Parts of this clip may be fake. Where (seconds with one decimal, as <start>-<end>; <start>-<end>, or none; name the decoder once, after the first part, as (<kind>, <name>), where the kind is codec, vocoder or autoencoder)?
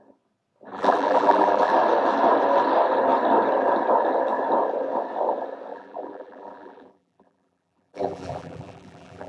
0.7-1.7 (vocoder, BigVGAN v2); 5.7-9.3